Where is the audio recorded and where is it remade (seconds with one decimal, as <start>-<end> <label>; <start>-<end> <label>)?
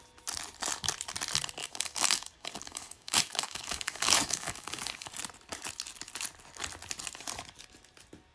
0.0-1.6 recorded; 1.6-5.1 remade; 5.1-8.3 recorded